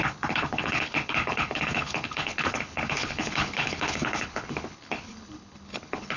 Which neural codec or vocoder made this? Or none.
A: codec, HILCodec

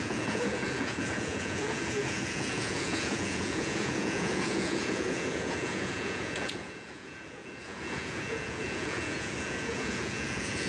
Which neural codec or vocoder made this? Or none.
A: vocoder, Vocos